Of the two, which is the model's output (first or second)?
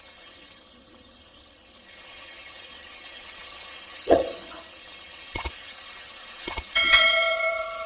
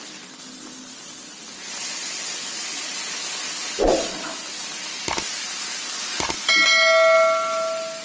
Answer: first